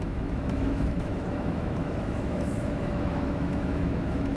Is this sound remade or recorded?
remade